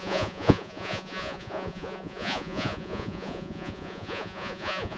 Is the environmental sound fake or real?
fake